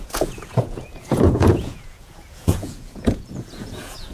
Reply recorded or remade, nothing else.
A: remade